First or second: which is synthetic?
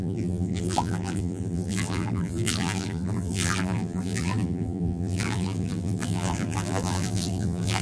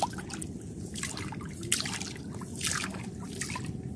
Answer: first